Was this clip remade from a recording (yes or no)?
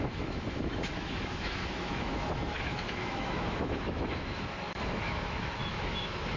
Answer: yes